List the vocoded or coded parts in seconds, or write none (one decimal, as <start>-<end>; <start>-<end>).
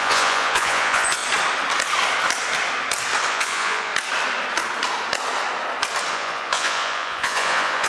0.0-1.2; 3.3-3.9; 6.1-7.9